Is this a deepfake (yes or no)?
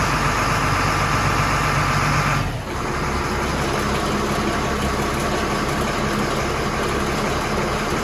no